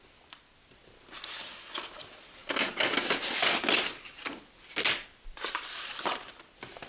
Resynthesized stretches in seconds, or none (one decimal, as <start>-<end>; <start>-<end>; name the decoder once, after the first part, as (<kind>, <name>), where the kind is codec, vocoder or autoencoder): none